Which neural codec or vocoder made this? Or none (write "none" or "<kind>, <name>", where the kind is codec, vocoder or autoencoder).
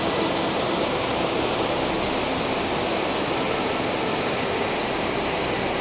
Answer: none